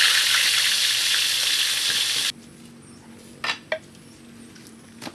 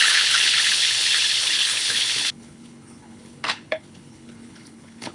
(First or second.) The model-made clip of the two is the second